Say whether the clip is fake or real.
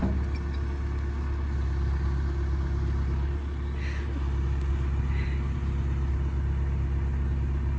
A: real